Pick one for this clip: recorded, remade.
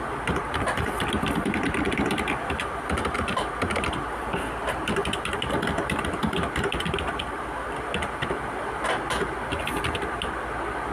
remade